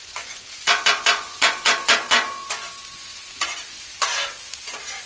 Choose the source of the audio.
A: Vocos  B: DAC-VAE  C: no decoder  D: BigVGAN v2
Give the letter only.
A